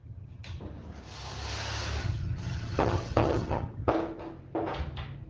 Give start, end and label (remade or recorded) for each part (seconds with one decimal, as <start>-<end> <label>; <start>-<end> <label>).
0.0-0.6 remade; 0.6-2.0 recorded; 2.0-3.9 remade; 3.9-5.3 recorded